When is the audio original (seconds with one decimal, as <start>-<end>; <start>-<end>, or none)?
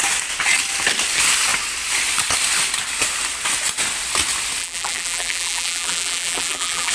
0.0-4.6